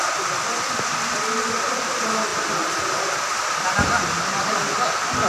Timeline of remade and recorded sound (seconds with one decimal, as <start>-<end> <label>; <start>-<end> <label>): 0.0-5.3 recorded